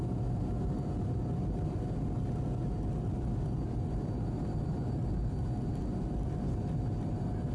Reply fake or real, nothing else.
real